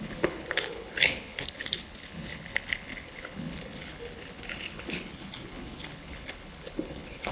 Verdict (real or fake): fake